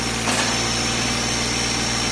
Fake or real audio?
real